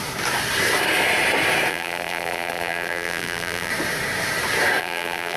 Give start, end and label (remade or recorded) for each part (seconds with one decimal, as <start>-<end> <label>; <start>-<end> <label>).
0.0-1.7 recorded; 1.7-3.7 remade; 3.7-4.8 recorded; 4.8-5.4 remade

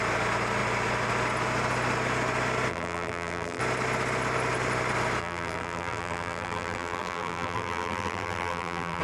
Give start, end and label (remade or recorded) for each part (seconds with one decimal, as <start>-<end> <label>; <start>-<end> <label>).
0.0-2.7 recorded; 2.7-3.6 remade; 3.6-5.2 recorded; 5.2-9.0 remade

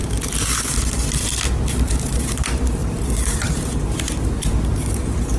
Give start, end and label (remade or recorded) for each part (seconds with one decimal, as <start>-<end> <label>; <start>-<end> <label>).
0.0-1.7 recorded; 1.7-2.8 remade; 2.8-3.4 recorded; 3.4-5.4 remade

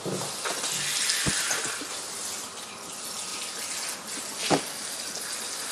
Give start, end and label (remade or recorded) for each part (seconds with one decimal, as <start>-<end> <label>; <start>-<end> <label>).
0.0-5.7 recorded

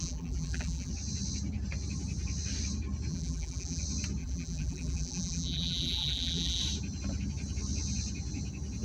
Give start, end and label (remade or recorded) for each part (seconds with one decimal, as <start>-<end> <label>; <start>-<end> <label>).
0.0-0.9 remade; 0.9-3.1 recorded; 3.1-3.8 remade; 3.8-4.2 recorded; 4.2-6.6 remade; 6.6-8.8 recorded

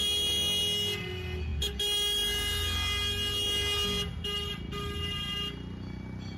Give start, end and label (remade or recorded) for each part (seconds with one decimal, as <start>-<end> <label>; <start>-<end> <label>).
0.0-6.4 recorded

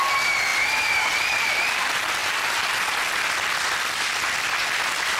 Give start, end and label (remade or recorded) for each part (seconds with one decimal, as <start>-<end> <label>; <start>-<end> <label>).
0.0-0.5 recorded; 0.5-1.8 remade; 1.8-2.2 recorded; 2.2-3.1 remade; 3.1-5.2 recorded